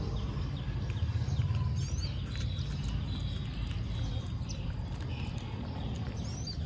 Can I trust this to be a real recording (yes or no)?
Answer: yes